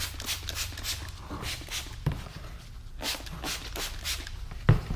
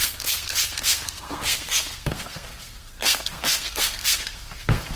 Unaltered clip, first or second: first